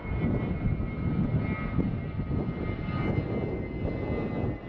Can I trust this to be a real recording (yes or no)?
yes